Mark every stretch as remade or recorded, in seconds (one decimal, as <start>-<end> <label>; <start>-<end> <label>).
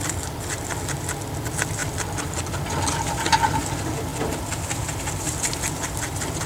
0.0-6.5 recorded